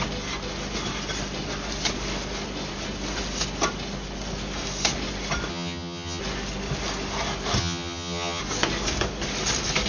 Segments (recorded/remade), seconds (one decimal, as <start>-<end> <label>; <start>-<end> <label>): 0.0-5.5 recorded; 5.5-6.2 remade; 6.2-7.6 recorded; 7.6-8.4 remade; 8.4-9.9 recorded